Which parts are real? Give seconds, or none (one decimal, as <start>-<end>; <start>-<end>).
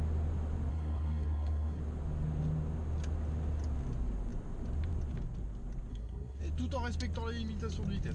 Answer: 0.0-0.7; 1.8-5.9; 6.4-8.1